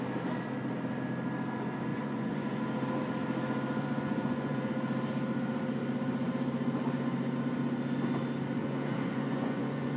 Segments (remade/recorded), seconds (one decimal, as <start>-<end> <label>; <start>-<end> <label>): 0.0-1.9 recorded; 1.9-2.6 remade; 2.6-3.8 recorded; 3.8-4.7 remade; 4.7-8.6 recorded; 8.6-10.0 remade